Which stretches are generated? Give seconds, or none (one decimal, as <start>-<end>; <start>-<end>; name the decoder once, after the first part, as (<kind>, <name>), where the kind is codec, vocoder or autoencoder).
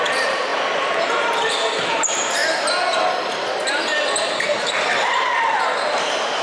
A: 0.0-0.5 (vocoder, BigVGAN v2); 1.1-2.4; 3.7-6.4